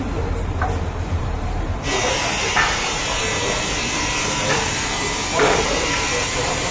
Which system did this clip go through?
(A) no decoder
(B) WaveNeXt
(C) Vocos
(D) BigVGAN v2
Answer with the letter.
D